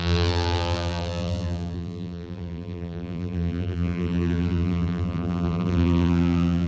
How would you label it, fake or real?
fake